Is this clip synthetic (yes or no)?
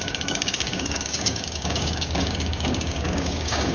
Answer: yes